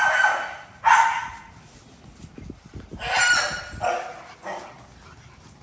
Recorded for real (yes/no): yes